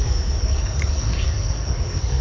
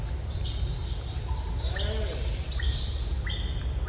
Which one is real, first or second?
second